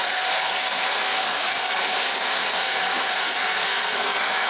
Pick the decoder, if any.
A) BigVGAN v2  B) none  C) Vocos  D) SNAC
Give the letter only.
D